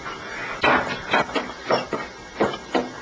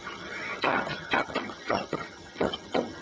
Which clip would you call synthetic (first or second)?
second